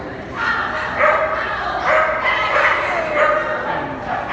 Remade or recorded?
recorded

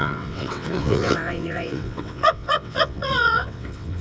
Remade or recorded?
remade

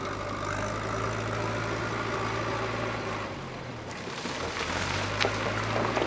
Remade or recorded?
recorded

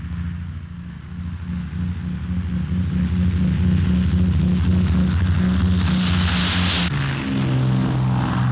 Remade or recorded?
recorded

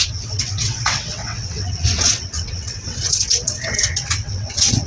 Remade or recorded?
remade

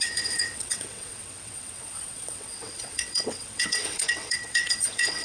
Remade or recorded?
remade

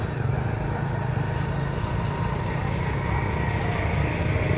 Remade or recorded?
recorded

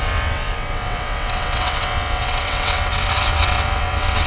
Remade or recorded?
remade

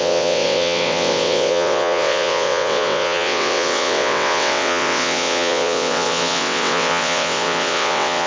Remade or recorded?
remade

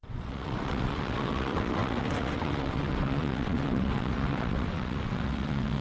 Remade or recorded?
remade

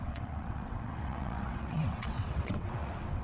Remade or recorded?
remade